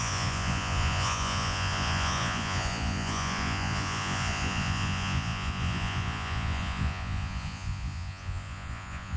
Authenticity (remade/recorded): remade